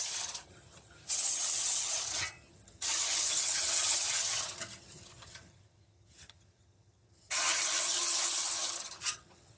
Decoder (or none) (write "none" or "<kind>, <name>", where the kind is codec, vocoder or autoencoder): vocoder, HiFi-GAN